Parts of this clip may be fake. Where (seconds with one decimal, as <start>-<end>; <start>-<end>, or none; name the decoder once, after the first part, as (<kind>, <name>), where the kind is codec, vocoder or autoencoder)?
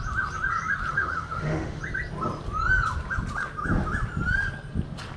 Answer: 0.9-1.8 (autoencoder, DAC-VAE)